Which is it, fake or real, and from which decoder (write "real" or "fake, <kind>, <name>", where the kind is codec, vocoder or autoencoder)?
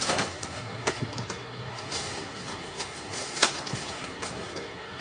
fake, codec, SNAC